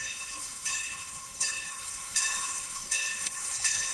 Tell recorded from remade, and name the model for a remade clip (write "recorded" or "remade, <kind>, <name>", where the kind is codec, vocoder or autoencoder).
remade, codec, HILCodec